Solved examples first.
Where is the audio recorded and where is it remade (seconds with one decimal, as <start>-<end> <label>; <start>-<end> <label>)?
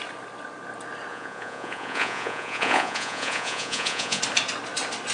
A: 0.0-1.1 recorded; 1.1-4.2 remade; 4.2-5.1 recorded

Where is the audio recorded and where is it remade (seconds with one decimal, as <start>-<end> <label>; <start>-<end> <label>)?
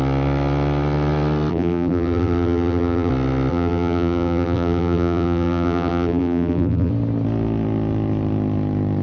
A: 0.0-1.5 recorded; 1.5-3.1 remade; 3.1-3.5 recorded; 3.5-6.9 remade; 6.9-9.0 recorded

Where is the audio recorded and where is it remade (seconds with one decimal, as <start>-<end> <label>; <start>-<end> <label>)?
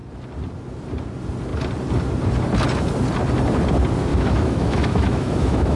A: 0.0-4.1 recorded; 4.1-5.8 remade